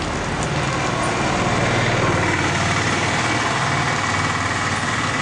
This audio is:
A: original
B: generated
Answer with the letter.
A